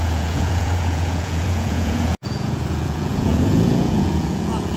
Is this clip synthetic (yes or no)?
yes